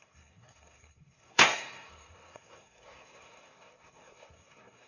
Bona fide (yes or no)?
no